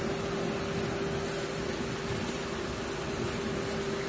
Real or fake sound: real